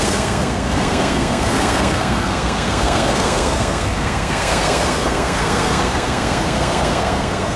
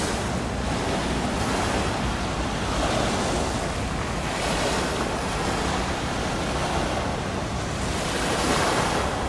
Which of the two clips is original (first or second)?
second